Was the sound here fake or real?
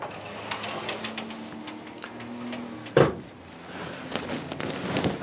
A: real